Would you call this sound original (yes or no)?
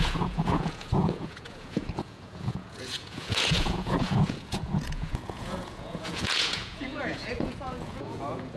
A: no